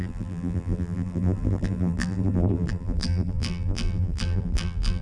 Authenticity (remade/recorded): remade